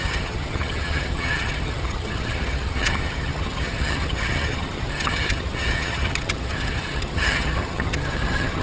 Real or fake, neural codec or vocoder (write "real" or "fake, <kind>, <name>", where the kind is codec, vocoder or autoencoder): fake, vocoder, HiFi-GAN